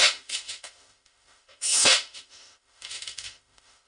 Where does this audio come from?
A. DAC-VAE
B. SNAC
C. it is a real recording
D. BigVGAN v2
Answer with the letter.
A